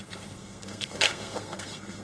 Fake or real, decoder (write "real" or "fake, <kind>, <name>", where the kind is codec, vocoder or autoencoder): fake, codec, SNAC